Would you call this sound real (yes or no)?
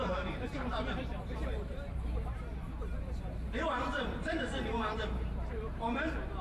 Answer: no